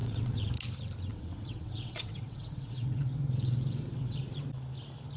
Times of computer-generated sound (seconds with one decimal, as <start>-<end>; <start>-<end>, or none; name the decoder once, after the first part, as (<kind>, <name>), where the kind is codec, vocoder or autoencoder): 0.0-0.5 (vocoder, WaveNeXt); 1.1-4.2